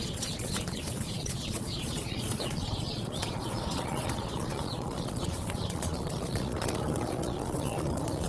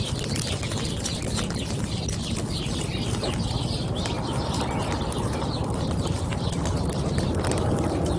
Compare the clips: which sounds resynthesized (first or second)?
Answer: first